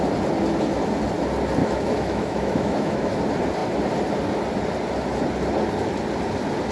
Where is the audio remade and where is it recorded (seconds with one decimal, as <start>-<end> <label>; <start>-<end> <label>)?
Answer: 0.0-1.6 recorded; 1.6-3.2 remade; 3.2-6.7 recorded